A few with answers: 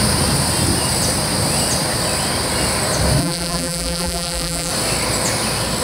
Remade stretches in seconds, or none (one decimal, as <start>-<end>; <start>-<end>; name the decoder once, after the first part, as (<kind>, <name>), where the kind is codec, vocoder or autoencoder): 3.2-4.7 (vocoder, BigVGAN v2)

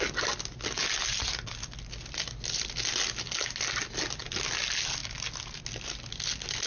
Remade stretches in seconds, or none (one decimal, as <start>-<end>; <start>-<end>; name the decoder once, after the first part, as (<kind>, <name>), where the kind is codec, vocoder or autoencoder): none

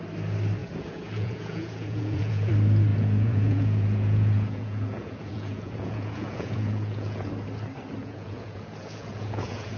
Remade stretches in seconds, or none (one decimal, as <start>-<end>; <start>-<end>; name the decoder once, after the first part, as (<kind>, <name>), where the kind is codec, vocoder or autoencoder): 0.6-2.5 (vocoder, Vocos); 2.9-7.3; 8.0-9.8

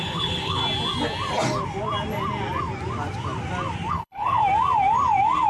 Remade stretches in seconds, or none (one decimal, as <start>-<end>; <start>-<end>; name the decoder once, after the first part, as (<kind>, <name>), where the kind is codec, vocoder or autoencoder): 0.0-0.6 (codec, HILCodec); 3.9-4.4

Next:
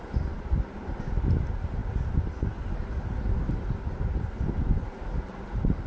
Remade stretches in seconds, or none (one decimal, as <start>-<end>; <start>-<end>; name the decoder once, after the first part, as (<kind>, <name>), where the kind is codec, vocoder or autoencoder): none

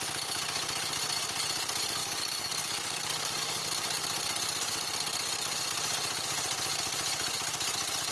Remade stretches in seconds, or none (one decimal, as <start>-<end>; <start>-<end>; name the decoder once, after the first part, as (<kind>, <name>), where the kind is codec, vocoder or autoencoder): 2.0-3.6 (codec, DAC)

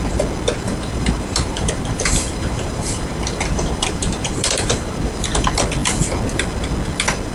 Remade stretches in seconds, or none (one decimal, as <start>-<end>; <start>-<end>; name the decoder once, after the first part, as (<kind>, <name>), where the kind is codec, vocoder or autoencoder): 0.7-5.1 (vocoder, BigVGAN v2)